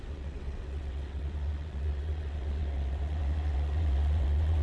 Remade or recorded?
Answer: remade